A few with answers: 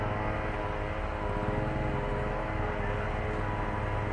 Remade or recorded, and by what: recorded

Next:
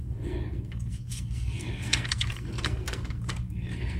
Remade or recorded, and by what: remade, codec, SNAC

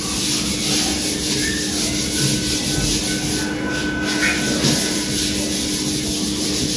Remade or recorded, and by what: recorded